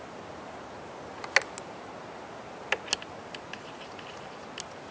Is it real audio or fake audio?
real